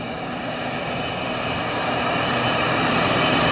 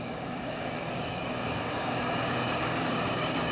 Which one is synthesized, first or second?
second